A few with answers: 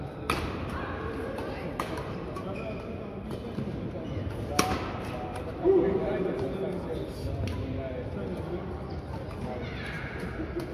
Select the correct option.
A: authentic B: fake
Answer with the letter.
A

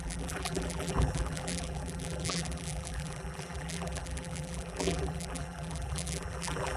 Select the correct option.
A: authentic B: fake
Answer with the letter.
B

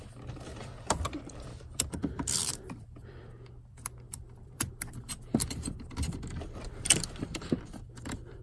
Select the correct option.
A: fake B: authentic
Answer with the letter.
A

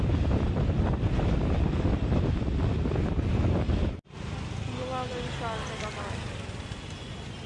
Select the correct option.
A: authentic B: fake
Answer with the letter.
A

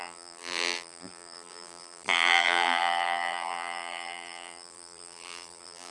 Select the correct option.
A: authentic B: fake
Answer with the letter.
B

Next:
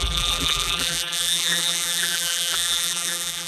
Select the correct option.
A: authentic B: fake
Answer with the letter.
B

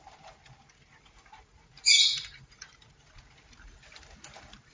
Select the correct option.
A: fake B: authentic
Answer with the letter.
A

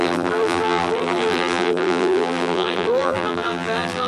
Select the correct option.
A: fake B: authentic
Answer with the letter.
A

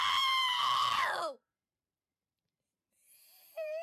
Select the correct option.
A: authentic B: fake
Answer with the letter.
B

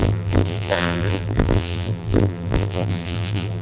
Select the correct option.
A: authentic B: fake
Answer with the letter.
B